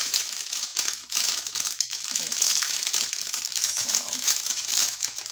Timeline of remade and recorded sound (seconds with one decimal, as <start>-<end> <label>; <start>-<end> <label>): 0.0-5.3 remade